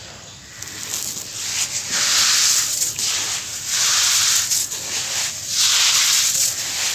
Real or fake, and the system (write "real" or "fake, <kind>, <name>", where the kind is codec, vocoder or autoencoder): real